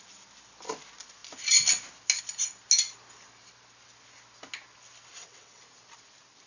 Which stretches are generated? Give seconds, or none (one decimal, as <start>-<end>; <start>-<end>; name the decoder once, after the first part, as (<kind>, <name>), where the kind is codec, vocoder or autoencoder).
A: 5.1-5.6 (vocoder, WaveNeXt)